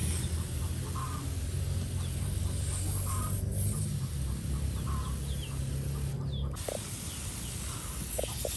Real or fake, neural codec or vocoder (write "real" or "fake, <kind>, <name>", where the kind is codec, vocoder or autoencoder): real